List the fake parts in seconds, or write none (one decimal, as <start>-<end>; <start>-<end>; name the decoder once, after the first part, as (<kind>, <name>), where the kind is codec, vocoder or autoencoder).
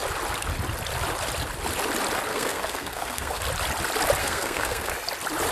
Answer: 2.3-3.4 (codec, SNAC); 4.2-4.9